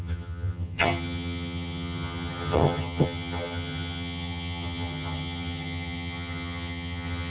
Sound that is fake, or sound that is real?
fake